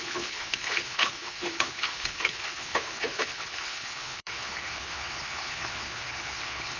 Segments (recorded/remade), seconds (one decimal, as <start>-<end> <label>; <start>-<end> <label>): 0.0-6.8 remade